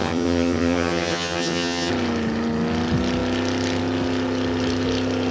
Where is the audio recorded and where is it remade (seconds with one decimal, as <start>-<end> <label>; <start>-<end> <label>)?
0.0-1.9 remade; 1.9-5.3 recorded